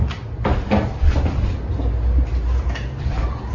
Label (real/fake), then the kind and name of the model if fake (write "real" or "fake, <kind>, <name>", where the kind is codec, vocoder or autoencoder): real